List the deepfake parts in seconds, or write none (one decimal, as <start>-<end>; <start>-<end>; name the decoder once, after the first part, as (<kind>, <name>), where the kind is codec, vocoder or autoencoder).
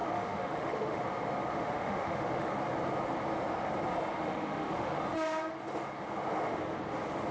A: 0.0-1.0 (autoencoder, DAC-VAE); 1.5-2.5; 4.1-5.0